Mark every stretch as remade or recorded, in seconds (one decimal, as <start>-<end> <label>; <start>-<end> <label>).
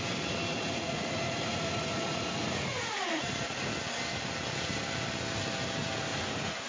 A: 0.0-0.5 recorded; 0.5-3.7 remade; 3.7-6.1 recorded; 6.1-6.7 remade